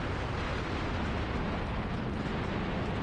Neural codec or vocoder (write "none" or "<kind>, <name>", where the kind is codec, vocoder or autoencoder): none